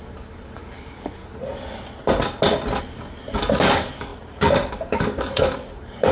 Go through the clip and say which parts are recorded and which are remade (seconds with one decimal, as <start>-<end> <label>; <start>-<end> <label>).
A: 0.0-1.2 remade; 1.2-2.8 recorded; 2.8-6.1 remade